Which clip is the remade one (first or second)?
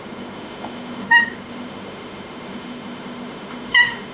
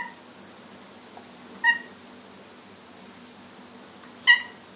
first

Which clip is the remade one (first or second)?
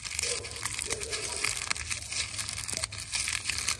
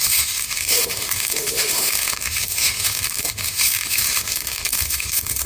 second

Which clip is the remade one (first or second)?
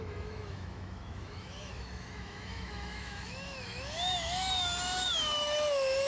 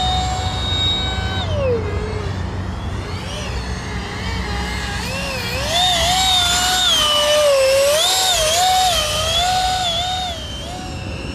first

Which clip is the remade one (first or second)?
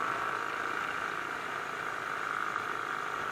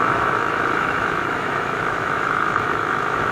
second